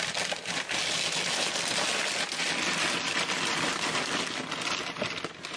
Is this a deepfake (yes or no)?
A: no